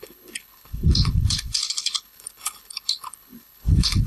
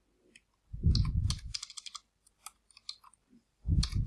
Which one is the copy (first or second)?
first